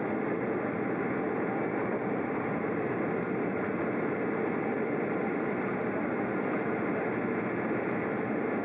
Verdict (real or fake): real